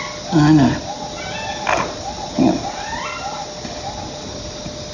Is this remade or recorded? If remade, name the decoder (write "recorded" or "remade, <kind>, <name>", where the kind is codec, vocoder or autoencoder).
recorded